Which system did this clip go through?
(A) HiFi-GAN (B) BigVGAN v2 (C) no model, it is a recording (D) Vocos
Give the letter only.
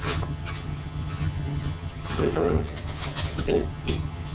A